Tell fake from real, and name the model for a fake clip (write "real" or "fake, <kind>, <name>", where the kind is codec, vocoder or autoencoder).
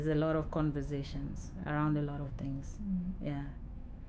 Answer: fake, autoencoder, DAC-VAE